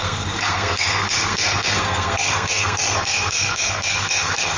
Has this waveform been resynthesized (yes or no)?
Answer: yes